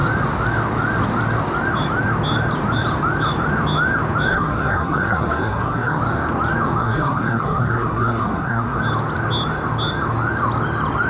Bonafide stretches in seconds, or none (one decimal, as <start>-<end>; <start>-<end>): 0.0-4.3; 6.0-6.8; 8.8-11.1